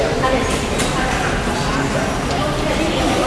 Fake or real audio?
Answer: real